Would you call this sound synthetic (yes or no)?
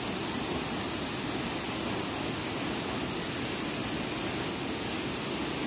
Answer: no